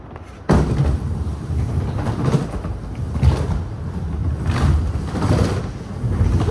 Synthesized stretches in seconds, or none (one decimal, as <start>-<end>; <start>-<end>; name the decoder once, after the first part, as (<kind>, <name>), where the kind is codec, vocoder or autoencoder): none